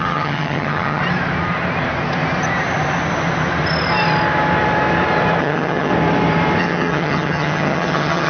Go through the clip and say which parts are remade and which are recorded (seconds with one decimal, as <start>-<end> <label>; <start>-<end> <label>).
0.0-1.0 remade; 1.0-5.4 recorded; 5.4-5.9 remade; 5.9-6.6 recorded; 6.6-8.3 remade